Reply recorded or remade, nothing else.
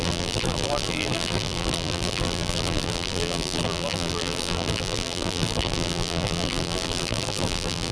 remade